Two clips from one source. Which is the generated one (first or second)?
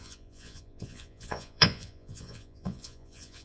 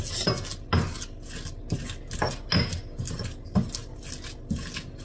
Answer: first